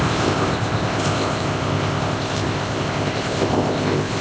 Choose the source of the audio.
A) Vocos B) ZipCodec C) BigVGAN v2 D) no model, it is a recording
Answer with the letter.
B